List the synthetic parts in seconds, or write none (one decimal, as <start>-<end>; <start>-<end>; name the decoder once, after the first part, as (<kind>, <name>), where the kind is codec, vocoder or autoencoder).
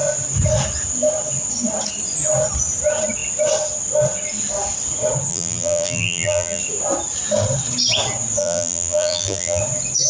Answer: 5.3-6.6 (vocoder, BigVGAN v2); 8.4-9.6